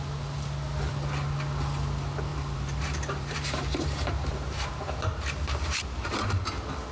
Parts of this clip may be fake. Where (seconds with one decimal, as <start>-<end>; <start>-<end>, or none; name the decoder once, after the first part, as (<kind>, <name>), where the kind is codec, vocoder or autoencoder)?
2.3-6.1 (vocoder, BigVGAN v2)